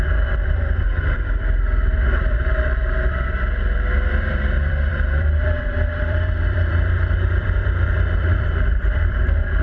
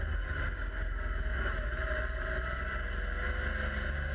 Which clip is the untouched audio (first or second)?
second